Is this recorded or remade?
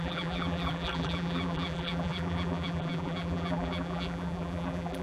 remade